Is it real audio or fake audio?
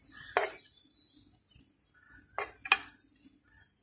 real